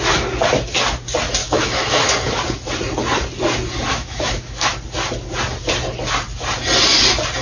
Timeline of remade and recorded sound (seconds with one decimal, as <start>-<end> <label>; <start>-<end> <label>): 0.0-1.4 recorded; 1.4-2.1 remade; 2.1-3.9 recorded; 3.9-4.7 remade; 4.7-7.4 recorded

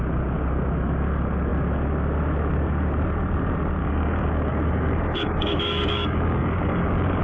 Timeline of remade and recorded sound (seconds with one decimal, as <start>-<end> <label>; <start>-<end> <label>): 0.0-3.8 recorded; 3.8-7.2 remade

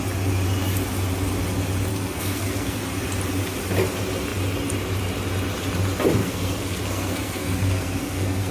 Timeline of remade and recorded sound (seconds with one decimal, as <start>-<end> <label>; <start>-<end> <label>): 0.0-1.9 recorded; 1.9-2.8 remade; 2.8-6.2 recorded; 6.2-8.5 remade

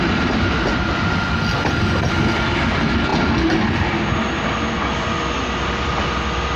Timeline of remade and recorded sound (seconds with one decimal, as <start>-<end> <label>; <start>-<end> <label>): 0.0-6.6 recorded

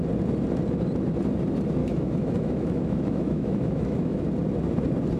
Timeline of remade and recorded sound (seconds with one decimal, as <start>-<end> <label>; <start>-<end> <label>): 0.0-1.8 recorded; 1.8-4.2 remade; 4.2-5.2 recorded